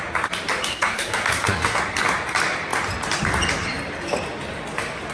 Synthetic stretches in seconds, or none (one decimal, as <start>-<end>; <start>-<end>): 0.7-1.8